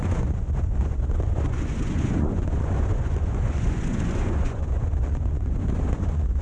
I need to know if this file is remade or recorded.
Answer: remade